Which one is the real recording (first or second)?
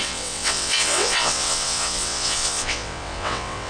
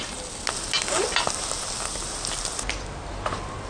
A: second